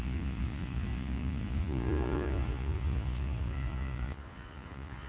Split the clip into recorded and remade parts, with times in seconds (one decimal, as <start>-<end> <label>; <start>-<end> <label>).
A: 0.0-5.1 remade